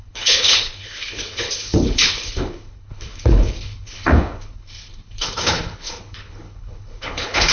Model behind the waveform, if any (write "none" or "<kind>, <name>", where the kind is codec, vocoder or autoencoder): codec, HILCodec